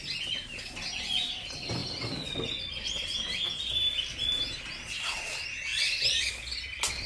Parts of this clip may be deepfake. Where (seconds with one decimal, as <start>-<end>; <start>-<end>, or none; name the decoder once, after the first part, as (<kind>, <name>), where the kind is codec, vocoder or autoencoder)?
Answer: 5.7-6.3 (vocoder, BigVGAN v2)

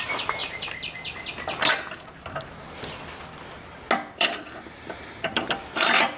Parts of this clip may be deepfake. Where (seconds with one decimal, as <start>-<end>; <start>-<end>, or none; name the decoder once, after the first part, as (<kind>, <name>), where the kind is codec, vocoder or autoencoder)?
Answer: 0.0-0.4 (vocoder, BigVGAN v2); 4.1-6.2

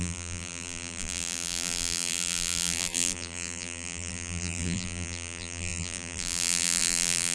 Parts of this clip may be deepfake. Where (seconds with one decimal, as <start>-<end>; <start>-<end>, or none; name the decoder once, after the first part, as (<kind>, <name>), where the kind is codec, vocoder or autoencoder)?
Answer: 0.0-7.3 (vocoder, BigVGAN v2)